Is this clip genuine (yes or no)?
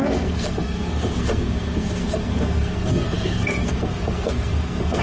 no